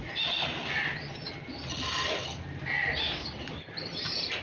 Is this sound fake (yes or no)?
no